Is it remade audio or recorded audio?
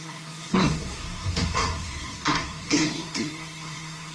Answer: remade